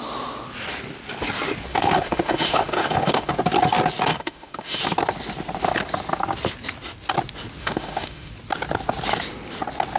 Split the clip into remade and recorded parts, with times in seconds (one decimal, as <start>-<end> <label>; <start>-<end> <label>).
0.0-1.7 recorded; 1.7-3.3 remade; 3.3-4.1 recorded; 4.1-4.8 remade; 4.8-7.6 recorded; 7.6-8.3 remade; 8.3-10.0 recorded